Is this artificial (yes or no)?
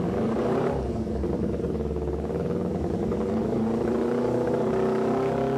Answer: yes